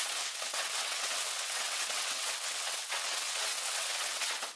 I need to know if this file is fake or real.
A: fake